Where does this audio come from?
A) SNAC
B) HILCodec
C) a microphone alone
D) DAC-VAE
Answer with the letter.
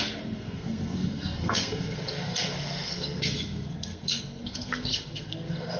A